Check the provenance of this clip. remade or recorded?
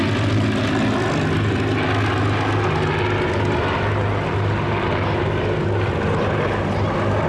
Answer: recorded